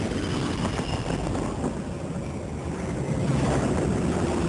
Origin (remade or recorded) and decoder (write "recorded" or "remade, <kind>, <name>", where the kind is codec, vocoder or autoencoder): recorded